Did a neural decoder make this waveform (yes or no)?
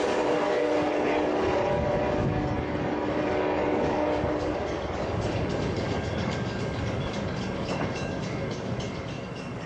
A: yes